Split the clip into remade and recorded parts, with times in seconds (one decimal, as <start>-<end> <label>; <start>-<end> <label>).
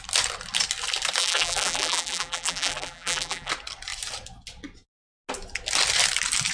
0.0-1.2 recorded; 1.2-3.5 remade; 3.5-6.5 recorded